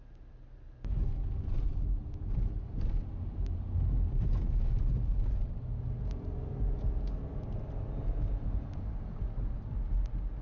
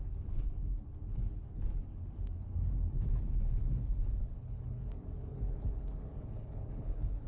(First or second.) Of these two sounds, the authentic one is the first